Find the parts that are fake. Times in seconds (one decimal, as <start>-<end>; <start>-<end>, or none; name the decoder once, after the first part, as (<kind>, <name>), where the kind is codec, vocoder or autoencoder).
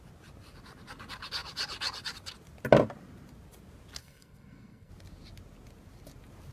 4.0-4.9 (codec, SNAC)